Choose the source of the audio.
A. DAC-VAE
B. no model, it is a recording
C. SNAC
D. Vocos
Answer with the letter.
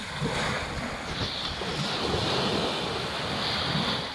B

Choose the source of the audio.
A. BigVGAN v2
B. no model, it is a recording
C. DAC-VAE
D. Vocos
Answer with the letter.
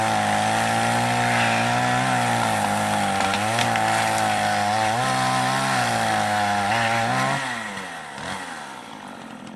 B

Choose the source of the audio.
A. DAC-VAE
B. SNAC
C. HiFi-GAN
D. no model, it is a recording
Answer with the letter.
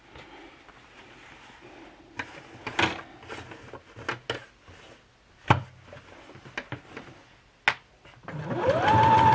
D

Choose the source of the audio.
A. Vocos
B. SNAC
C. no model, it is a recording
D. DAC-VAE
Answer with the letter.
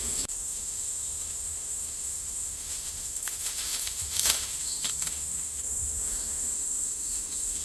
D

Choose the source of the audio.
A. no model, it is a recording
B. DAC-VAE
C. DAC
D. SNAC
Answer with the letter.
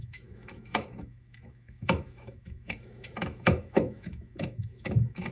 B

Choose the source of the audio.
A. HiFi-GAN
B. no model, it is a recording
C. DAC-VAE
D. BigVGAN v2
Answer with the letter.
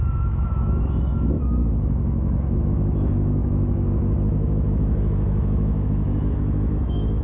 C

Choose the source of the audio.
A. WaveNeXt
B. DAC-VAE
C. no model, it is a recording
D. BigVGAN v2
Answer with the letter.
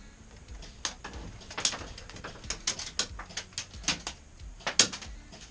C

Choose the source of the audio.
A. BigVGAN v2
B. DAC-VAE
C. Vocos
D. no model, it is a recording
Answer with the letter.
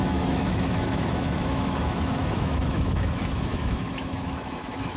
B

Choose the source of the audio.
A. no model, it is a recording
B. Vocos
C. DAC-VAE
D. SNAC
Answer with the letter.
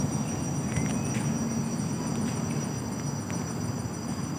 A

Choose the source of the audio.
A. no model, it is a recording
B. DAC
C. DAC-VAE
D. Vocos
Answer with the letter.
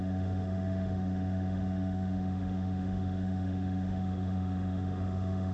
C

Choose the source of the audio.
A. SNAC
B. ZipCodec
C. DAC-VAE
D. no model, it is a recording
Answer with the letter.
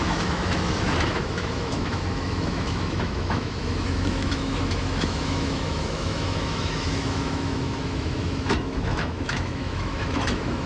C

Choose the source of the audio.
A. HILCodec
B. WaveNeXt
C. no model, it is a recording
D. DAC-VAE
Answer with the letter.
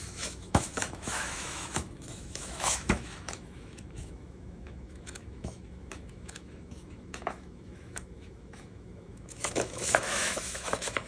D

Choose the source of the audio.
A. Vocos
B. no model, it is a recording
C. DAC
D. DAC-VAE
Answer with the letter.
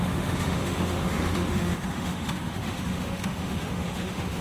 D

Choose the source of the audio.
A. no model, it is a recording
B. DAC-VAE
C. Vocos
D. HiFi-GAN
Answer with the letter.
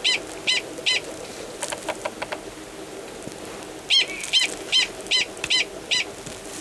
A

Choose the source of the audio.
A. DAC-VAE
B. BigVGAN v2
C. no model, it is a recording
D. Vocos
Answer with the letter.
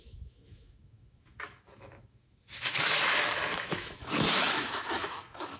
A